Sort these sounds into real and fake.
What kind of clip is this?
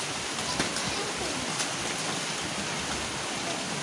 real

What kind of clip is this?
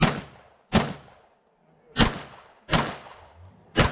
real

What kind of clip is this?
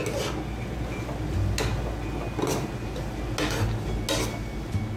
real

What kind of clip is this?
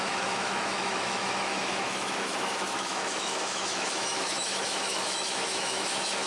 fake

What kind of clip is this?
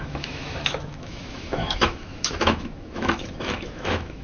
fake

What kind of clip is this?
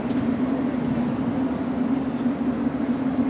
real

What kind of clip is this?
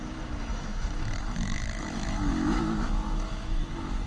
fake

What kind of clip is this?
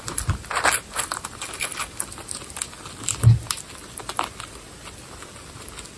real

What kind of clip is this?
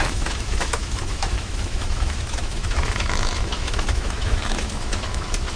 fake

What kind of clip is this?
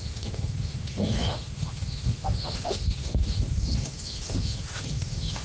fake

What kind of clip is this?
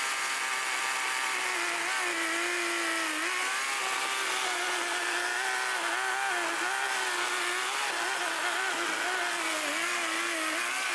real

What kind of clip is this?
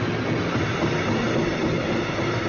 real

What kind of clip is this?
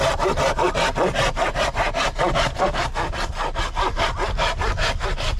real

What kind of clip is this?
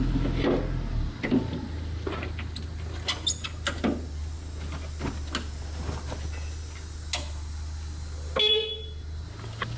real